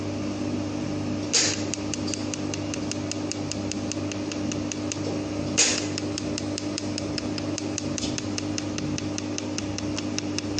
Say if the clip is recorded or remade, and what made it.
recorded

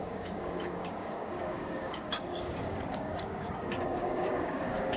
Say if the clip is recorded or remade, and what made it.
remade, codec, DAC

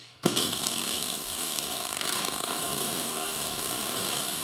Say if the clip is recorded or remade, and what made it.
remade, codec, DAC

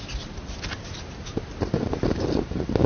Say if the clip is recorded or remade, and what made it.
recorded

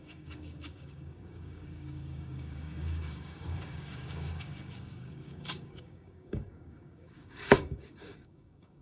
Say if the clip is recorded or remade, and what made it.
remade, codec, DAC